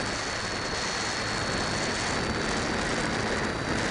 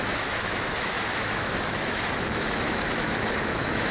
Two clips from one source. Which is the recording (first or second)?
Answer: first